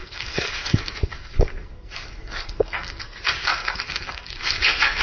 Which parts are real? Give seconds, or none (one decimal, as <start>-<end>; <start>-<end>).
none